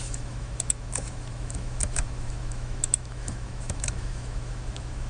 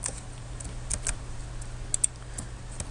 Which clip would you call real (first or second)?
second